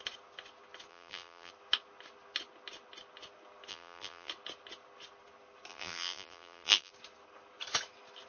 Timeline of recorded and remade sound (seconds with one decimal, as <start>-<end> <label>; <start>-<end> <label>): 0.0-0.9 recorded; 0.9-1.5 remade; 1.5-3.7 recorded; 3.7-4.3 remade; 4.3-5.7 recorded; 5.7-6.9 remade; 6.9-8.3 recorded

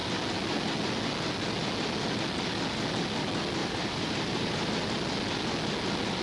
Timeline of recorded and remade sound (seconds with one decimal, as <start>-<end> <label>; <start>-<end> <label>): 0.0-3.6 recorded; 3.6-4.8 remade; 4.8-6.2 recorded

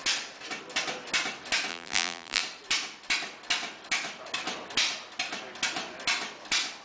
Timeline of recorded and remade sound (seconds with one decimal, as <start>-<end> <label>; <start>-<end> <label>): 0.0-1.7 recorded; 1.7-2.4 remade; 2.4-6.8 recorded

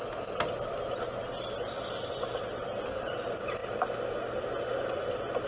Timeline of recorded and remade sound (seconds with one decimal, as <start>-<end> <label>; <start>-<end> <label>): 0.0-1.5 recorded; 1.5-3.6 remade; 3.6-4.7 recorded; 4.7-5.5 remade

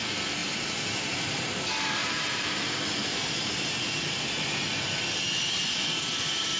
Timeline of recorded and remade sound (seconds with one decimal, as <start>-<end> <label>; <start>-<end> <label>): 0.0-0.4 recorded; 0.4-1.4 remade; 1.4-2.0 recorded; 2.0-2.7 remade; 2.7-6.6 recorded

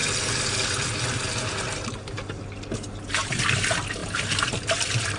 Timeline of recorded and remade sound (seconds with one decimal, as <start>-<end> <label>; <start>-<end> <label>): 0.0-4.0 recorded; 4.0-5.2 remade